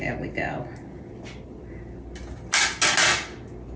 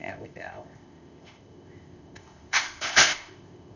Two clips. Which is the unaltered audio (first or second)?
first